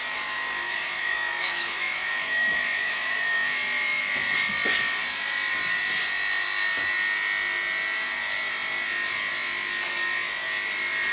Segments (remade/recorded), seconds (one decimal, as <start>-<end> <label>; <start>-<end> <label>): 0.0-4.0 remade; 4.0-11.1 recorded